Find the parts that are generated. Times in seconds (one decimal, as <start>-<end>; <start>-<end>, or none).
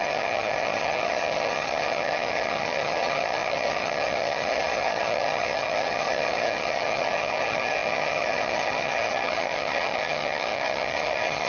0.0-11.5